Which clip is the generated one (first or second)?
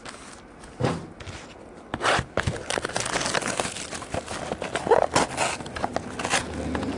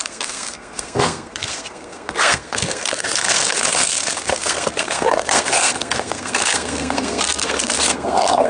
second